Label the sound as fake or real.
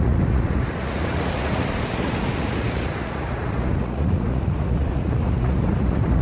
fake